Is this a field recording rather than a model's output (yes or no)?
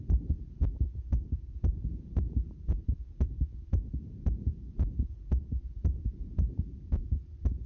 no